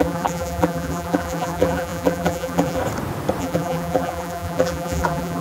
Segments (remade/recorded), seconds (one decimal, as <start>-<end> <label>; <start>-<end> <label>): 0.0-2.8 remade; 2.8-3.4 recorded; 3.4-5.4 remade